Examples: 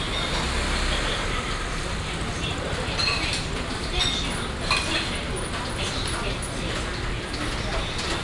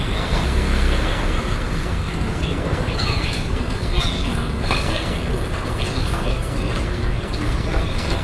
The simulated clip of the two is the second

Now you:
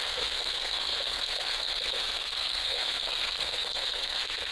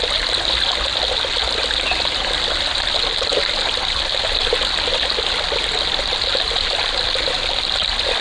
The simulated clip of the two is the first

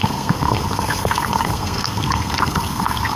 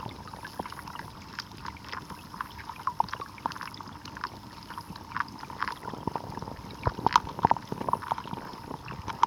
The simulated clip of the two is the first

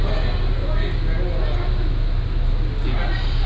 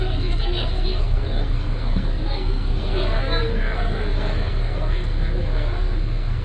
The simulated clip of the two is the second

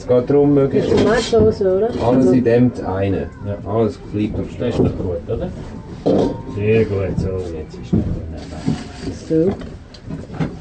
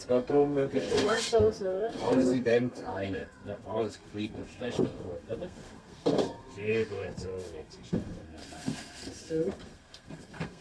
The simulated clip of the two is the second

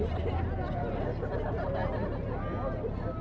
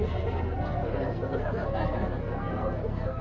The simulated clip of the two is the second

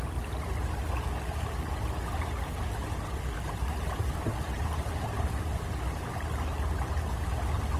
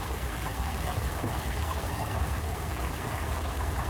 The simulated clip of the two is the second